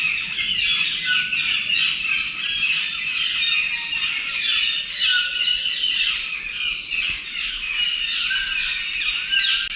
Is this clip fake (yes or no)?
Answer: no